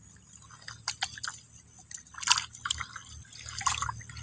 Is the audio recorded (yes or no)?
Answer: yes